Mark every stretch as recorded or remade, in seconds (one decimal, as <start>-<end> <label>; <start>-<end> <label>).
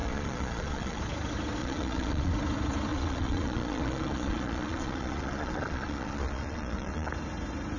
0.0-1.0 remade; 1.0-1.6 recorded; 1.6-2.3 remade; 2.3-2.9 recorded; 2.9-7.1 remade; 7.1-7.8 recorded